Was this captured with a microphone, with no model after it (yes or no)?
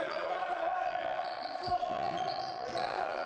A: no